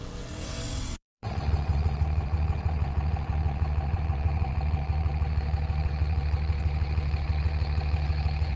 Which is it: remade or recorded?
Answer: remade